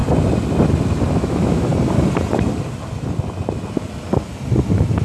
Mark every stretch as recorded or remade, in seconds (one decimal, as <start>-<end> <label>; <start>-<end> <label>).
0.0-1.2 recorded; 1.2-1.7 remade; 1.7-5.0 recorded